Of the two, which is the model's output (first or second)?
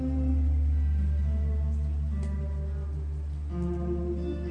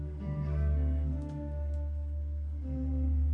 second